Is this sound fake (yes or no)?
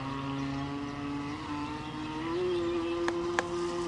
no